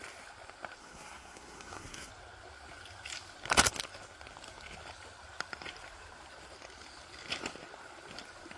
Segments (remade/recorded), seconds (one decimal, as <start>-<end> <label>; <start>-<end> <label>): 0.0-0.8 recorded; 0.8-2.1 remade; 2.1-8.6 recorded